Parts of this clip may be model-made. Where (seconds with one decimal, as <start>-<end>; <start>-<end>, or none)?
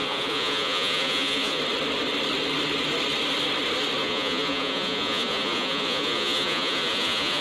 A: 0.0-1.6; 4.0-7.4